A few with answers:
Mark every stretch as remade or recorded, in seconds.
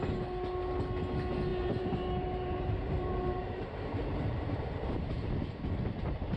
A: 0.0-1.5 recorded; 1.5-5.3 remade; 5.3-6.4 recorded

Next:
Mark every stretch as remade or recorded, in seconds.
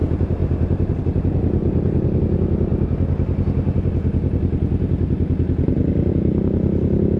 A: 0.0-0.4 recorded; 0.4-1.0 remade; 1.0-1.6 recorded; 1.6-2.2 remade; 2.2-7.2 recorded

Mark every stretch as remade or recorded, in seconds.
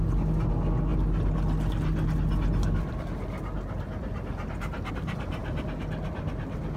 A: 0.0-6.8 recorded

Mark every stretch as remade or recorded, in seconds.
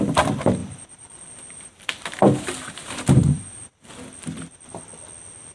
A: 0.0-0.6 recorded; 0.6-3.9 remade; 3.9-5.5 recorded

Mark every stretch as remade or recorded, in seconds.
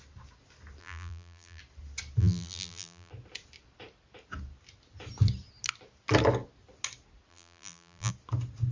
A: 0.0-0.8 recorded; 0.8-1.6 remade; 1.6-2.2 recorded; 2.2-3.1 remade; 3.1-7.3 recorded; 7.3-8.1 remade; 8.1-8.7 recorded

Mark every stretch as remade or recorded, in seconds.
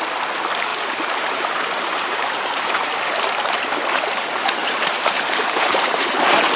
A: 0.0-0.7 recorded; 0.7-3.0 remade; 3.0-4.6 recorded; 4.6-6.1 remade; 6.1-6.6 recorded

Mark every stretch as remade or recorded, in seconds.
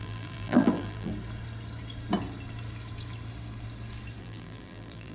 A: 0.0-1.1 remade; 1.1-4.2 recorded; 4.2-5.1 remade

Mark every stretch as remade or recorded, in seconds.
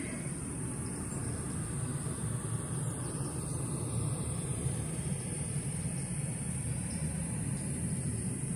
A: 0.0-4.5 recorded; 4.5-7.5 remade; 7.5-8.6 recorded